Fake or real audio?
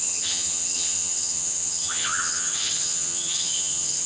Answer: fake